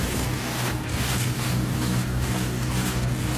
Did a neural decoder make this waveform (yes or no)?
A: yes